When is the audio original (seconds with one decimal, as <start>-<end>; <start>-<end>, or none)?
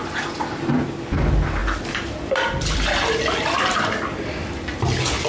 0.0-1.6; 4.3-5.3